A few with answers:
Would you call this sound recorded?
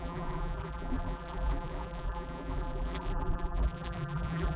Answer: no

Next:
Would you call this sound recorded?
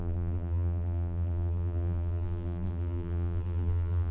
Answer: no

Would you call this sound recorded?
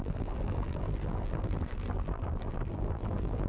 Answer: no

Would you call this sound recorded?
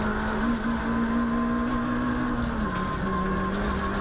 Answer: yes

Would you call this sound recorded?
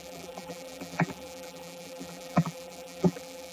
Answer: no